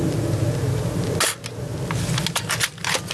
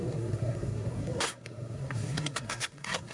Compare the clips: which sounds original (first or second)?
first